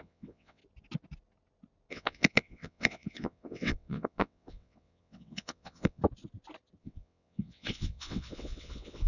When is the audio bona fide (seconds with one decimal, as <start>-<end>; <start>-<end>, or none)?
0.6-1.9; 6.0-6.8